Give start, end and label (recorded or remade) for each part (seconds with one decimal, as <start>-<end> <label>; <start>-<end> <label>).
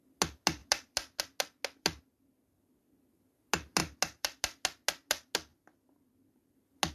0.0-6.9 recorded